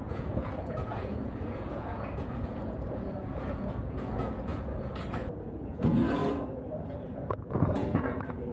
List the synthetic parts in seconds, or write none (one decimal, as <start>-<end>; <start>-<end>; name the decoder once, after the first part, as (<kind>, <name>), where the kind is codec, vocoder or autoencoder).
0.0-6.2 (vocoder, Vocos); 6.7-8.5